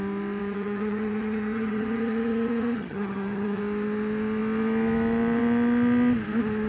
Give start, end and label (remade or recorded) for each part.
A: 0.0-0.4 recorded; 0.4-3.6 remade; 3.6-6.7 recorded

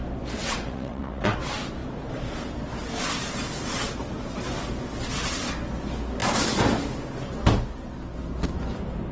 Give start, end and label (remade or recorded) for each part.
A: 0.0-0.4 recorded; 0.4-1.4 remade; 1.4-9.1 recorded

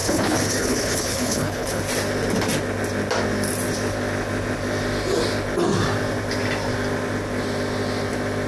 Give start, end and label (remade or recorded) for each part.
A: 0.0-1.8 remade; 1.8-8.5 recorded

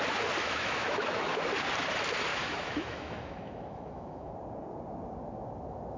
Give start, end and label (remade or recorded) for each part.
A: 0.0-0.4 recorded; 0.4-1.4 remade; 1.4-2.3 recorded; 2.3-4.3 remade; 4.3-6.0 recorded